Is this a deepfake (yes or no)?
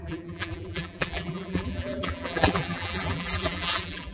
yes